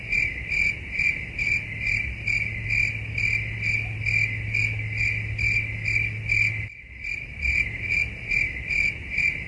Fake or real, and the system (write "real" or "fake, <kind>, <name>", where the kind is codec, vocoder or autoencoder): real